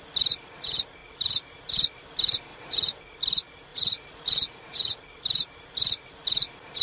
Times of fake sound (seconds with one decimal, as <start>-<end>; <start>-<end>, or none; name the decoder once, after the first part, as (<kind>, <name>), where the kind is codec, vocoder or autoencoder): 2.5-3.0 (vocoder, Vocos); 3.7-5.0